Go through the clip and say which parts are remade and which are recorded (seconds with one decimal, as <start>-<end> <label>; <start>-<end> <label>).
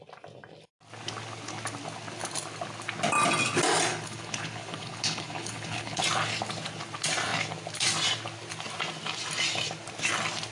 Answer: 0.0-3.9 recorded; 3.9-6.0 remade; 6.0-10.5 recorded